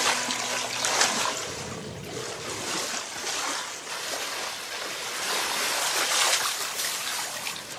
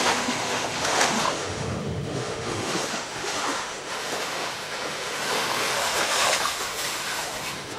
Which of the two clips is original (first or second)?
first